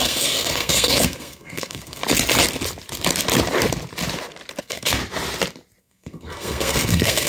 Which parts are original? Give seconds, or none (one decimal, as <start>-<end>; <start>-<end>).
2.0-4.6; 5.0-5.8